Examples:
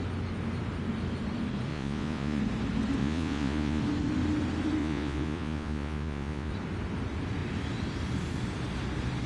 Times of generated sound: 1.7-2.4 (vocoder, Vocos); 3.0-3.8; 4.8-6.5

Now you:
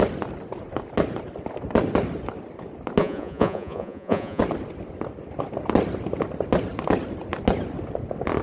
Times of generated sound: 3.0-4.4 (vocoder, Vocos)

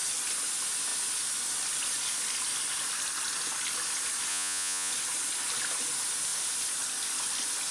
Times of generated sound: 4.3-4.9 (vocoder, Vocos)

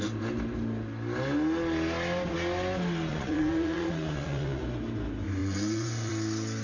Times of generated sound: 3.1-4.6 (vocoder, Vocos); 5.4-6.1

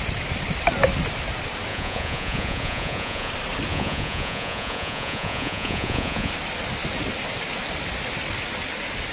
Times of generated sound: 1.7-3.3 (vocoder, Vocos); 3.7-6.3